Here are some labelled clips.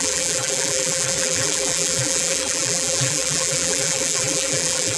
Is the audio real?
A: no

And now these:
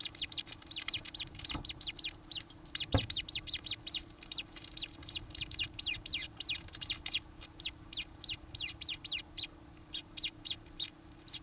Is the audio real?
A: no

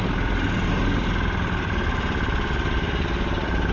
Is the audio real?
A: no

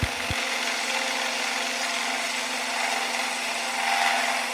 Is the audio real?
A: yes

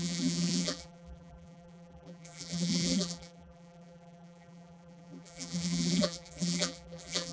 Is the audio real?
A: no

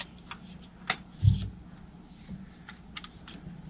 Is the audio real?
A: yes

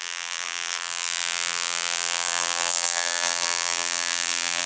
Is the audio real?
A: no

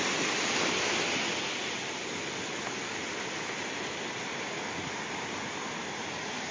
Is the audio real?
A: yes